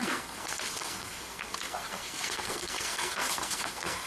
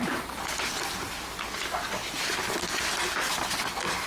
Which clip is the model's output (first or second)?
first